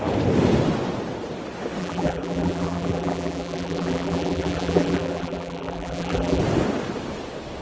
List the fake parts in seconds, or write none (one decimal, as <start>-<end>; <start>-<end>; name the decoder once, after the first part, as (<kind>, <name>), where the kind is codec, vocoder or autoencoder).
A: 1.8-6.4 (vocoder, BigVGAN v2)